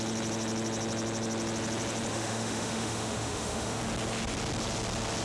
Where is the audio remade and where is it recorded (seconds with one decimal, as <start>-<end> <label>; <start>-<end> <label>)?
0.0-2.1 recorded; 2.1-3.8 remade; 3.8-5.2 recorded